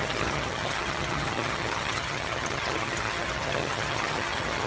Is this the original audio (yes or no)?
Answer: no